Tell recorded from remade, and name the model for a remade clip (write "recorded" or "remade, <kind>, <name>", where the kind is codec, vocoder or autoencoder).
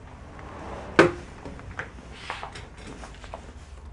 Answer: recorded